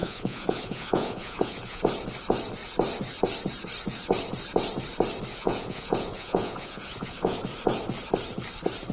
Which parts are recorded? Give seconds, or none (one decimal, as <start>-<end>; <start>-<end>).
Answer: 1.8-5.3; 7.4-8.9